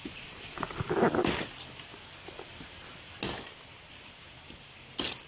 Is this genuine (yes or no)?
yes